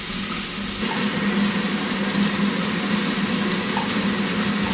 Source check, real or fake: real